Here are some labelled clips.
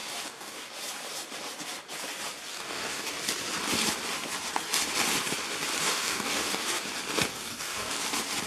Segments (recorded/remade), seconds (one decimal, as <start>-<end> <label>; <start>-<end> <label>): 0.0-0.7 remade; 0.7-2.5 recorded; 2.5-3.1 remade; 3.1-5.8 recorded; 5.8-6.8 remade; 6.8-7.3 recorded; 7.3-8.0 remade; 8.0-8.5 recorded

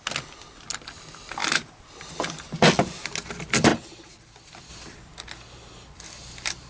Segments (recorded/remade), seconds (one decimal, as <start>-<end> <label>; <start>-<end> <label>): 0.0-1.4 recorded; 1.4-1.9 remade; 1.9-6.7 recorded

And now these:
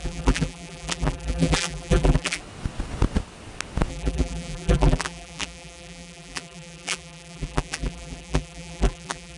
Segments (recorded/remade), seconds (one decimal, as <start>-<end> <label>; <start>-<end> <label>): 0.0-2.4 remade; 2.4-3.9 recorded; 3.9-9.4 remade